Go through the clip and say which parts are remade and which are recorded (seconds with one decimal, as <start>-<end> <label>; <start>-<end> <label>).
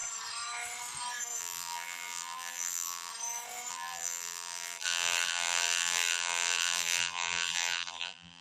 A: 0.0-1.4 recorded; 1.4-3.1 remade; 3.1-3.7 recorded; 3.7-8.4 remade